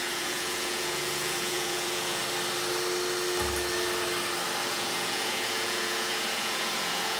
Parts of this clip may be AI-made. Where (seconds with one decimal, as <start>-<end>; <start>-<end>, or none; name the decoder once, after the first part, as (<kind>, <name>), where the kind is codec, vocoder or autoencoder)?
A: 0.0-2.2 (vocoder, Vocos); 4.7-7.2